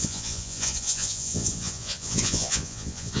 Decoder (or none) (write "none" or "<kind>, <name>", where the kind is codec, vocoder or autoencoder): vocoder, Vocos